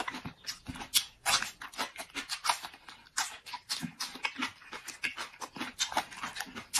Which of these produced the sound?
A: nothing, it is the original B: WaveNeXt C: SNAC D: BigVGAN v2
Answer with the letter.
A